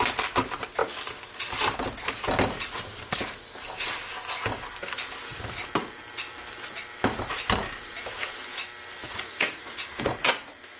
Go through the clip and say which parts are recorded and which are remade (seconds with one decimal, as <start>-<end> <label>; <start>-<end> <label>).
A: 0.0-9.0 recorded; 9.0-10.3 remade; 10.3-10.8 recorded